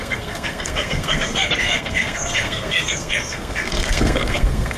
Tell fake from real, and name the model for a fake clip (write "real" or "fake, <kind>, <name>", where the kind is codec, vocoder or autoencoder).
fake, codec, SNAC